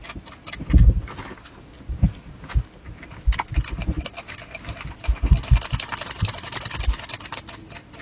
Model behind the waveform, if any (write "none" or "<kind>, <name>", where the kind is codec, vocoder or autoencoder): none